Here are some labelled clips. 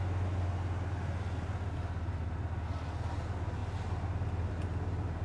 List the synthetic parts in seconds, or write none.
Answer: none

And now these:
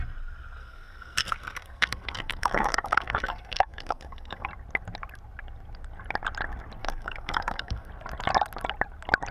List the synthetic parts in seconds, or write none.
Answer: 0.6-4.5 (codec, SNAC); 6.8-7.9